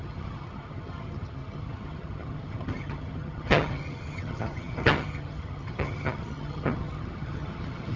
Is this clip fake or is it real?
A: fake